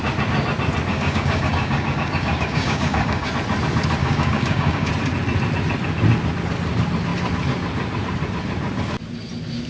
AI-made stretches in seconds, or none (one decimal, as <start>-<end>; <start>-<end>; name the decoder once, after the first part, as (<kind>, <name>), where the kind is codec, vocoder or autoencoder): 0.9-3.3 (codec, DAC); 4.0-4.9